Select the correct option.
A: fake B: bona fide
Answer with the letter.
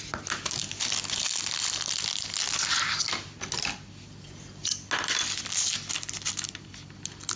B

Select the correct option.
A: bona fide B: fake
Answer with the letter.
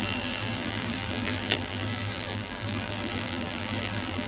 B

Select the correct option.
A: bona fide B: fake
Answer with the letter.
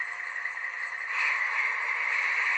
B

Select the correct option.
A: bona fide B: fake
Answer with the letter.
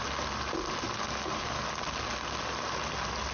A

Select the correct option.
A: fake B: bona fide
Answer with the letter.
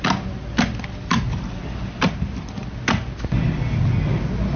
B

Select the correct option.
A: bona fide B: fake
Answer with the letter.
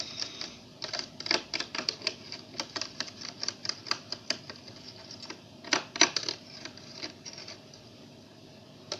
B